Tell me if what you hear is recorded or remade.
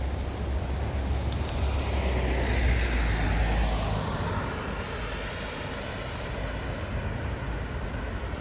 recorded